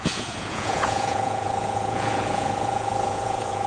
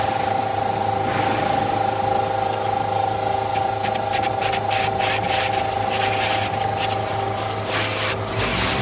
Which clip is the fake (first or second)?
first